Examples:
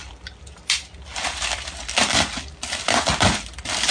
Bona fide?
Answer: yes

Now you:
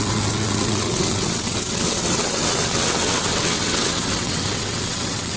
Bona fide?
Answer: no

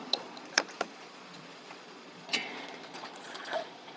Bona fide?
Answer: no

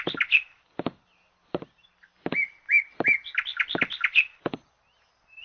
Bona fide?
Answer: yes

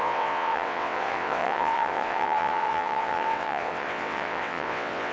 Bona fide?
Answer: no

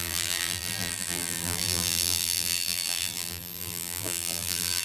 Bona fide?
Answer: no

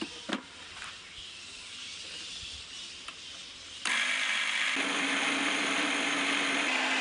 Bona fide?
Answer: yes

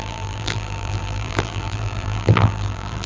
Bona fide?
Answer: no